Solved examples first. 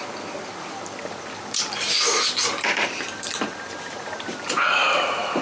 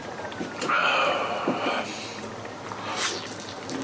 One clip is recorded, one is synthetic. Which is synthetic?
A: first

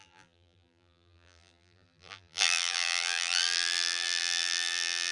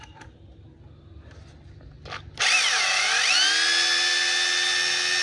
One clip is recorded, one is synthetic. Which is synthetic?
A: first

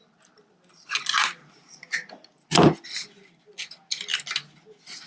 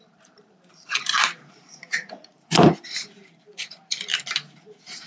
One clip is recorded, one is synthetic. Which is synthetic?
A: second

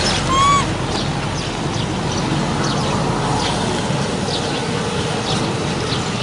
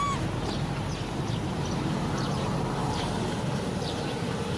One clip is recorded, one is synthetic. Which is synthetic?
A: second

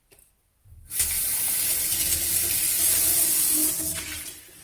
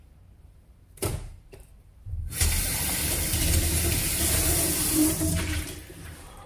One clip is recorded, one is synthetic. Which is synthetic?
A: second